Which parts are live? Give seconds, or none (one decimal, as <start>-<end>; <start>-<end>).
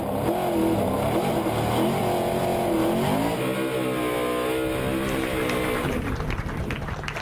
0.0-7.2